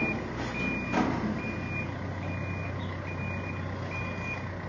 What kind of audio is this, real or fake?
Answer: real